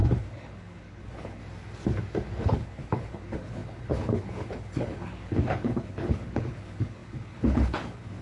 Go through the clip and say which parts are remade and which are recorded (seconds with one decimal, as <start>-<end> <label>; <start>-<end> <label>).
0.0-1.4 remade; 1.4-2.4 recorded; 2.4-8.2 remade